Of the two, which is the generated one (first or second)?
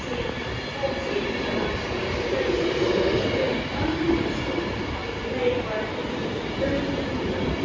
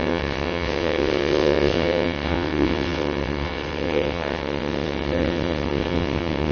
second